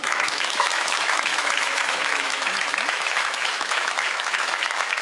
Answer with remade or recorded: remade